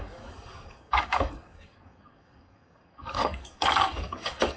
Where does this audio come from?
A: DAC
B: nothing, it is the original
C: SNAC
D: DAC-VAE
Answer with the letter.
A